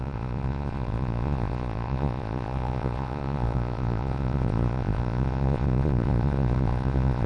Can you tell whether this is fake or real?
fake